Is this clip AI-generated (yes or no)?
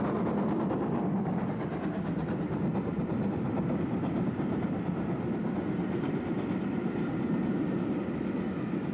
no